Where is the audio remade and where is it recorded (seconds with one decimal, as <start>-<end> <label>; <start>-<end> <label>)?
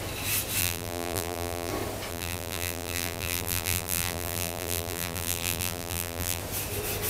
0.0-0.6 recorded; 0.6-1.7 remade; 1.7-2.1 recorded; 2.1-6.4 remade; 6.4-7.1 recorded